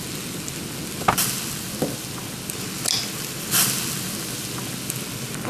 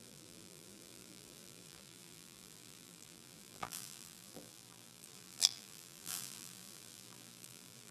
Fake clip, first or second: second